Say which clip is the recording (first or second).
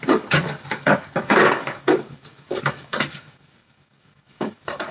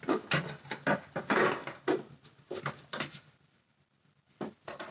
second